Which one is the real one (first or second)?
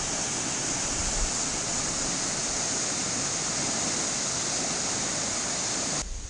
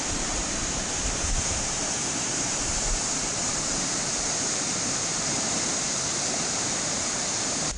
first